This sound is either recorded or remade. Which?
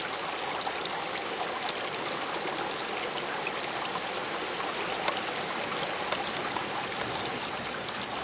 recorded